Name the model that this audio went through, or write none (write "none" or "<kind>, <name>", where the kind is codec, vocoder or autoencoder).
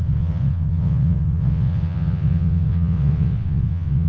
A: vocoder, WaveNeXt